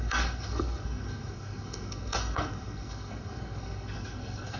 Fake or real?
fake